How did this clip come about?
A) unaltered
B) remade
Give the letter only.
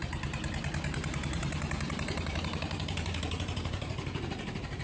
B